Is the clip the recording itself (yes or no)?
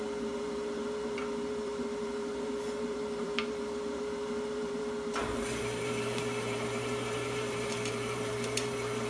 no